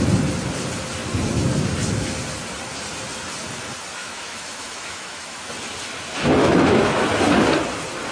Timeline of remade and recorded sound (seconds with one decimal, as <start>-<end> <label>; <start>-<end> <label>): 0.0-4.0 recorded; 4.0-5.4 remade; 5.4-6.4 recorded; 6.4-7.1 remade; 7.1-8.1 recorded